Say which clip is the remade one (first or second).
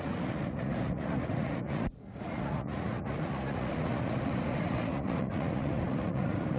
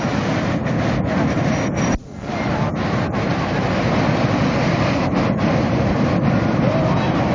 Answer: first